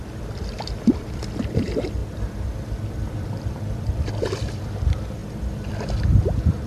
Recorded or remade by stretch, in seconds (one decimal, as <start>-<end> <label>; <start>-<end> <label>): 0.0-6.7 remade